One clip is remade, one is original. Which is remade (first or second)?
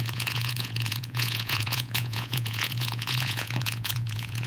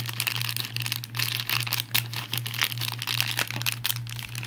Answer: first